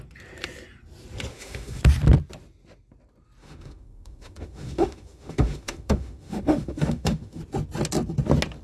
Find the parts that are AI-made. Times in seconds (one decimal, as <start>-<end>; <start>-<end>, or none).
1.3-1.8; 3.4-7.4